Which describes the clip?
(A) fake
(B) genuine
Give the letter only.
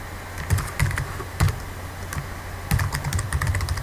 B